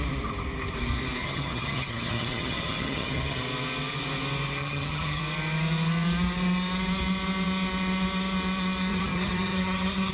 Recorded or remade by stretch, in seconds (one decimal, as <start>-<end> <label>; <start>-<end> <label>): 0.0-1.2 recorded; 1.2-3.4 remade; 3.4-4.6 recorded; 4.6-5.2 remade; 5.2-8.9 recorded; 8.9-10.1 remade